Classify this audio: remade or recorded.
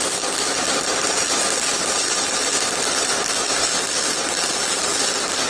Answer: recorded